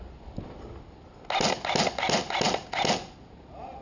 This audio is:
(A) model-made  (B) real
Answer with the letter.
B